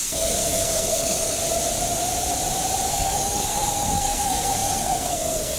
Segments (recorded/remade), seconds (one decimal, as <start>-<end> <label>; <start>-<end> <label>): 0.0-1.4 remade; 1.4-2.9 recorded; 2.9-5.6 remade